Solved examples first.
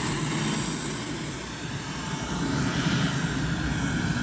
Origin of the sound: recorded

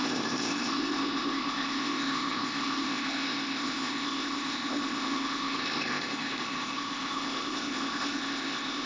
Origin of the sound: remade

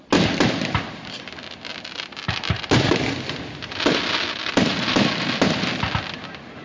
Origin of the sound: recorded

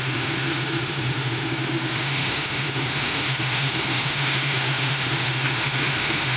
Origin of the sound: remade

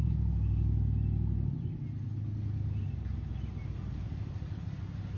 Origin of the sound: recorded